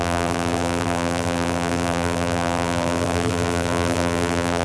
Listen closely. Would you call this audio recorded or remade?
remade